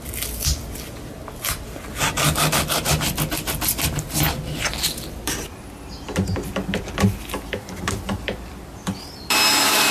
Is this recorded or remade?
recorded